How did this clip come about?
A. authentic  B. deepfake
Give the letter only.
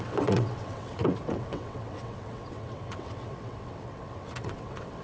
B